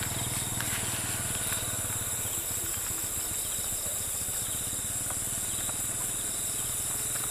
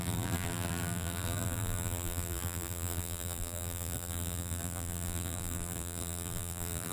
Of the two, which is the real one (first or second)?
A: first